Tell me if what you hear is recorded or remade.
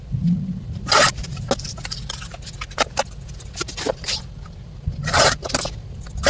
recorded